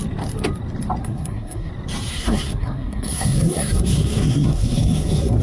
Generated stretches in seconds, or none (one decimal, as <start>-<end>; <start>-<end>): 1.0-1.7; 2.1-5.4